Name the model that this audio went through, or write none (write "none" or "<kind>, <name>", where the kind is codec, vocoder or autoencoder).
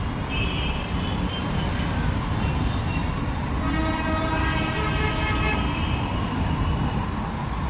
none